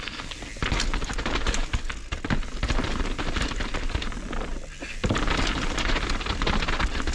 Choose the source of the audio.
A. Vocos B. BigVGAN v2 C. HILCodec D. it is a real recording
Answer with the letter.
D